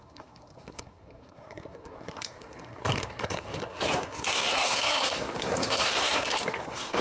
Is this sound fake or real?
fake